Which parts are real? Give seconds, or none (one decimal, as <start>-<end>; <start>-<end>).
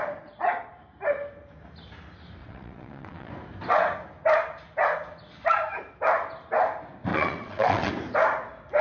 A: 0.0-2.4; 3.3-7.1; 7.9-8.8